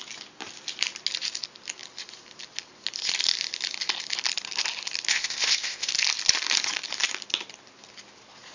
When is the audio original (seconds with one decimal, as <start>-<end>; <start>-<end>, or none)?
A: 0.0-5.1; 5.9-8.5